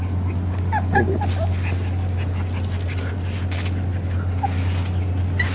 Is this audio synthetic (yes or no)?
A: no